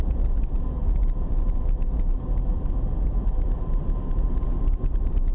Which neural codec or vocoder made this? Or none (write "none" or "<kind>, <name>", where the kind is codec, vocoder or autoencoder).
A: none